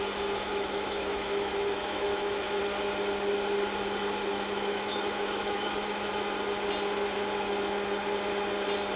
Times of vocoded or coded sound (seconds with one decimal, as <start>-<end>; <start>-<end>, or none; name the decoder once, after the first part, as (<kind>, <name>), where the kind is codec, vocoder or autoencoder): 0.5-2.6 (autoencoder, DAC-VAE); 4.3-6.1